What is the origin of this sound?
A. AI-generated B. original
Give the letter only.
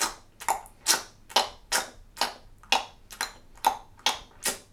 B